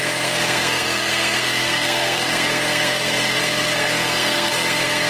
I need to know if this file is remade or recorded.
remade